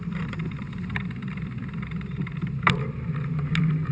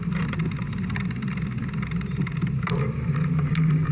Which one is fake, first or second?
first